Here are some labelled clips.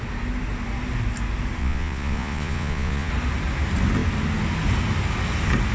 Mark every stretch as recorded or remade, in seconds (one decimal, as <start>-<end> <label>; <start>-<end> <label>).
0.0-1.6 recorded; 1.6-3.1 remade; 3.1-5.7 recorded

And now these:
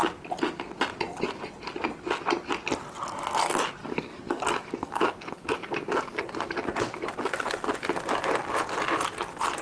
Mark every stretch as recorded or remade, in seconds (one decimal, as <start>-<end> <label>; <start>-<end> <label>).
0.0-3.8 recorded; 3.8-6.2 remade; 6.2-9.6 recorded

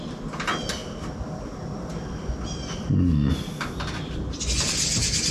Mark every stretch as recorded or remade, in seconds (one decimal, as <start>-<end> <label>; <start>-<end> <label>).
0.0-5.3 recorded

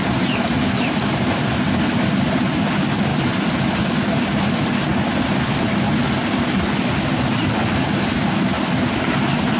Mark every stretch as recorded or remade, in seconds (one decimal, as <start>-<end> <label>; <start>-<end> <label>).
0.0-9.6 recorded